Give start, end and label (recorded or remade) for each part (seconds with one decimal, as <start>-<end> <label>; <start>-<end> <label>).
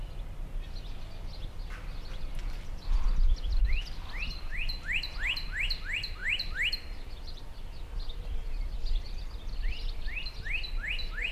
0.0-6.2 recorded; 6.2-7.6 remade; 7.6-11.3 recorded